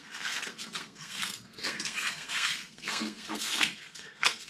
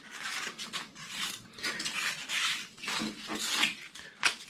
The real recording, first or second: second